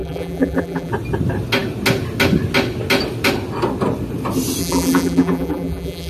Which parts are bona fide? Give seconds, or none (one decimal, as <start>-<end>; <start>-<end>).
0.9-4.6

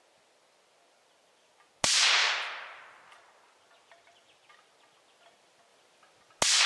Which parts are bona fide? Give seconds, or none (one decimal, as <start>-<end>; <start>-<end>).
0.0-2.2; 4.5-6.7

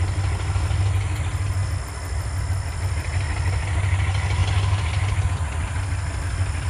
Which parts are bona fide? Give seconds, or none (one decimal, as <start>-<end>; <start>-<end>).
0.0-6.7